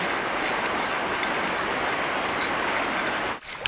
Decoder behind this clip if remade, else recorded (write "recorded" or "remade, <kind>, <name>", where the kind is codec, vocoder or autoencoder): recorded